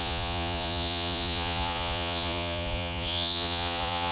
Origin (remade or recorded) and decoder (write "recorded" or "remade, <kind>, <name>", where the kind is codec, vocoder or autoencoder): remade, vocoder, Vocos